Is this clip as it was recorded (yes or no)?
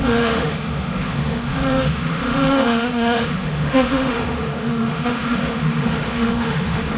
no